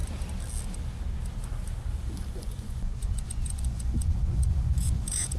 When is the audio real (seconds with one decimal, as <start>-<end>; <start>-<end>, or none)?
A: 0.0-2.3